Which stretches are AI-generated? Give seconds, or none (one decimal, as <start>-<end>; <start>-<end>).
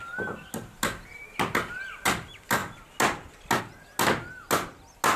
none